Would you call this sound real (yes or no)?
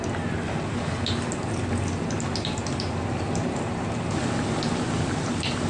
yes